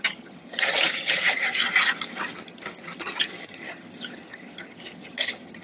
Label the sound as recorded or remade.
remade